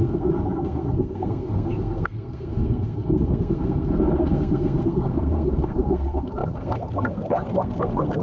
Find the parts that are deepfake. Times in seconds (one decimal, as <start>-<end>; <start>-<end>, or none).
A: 0.0-8.2